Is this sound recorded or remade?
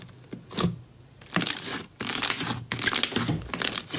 recorded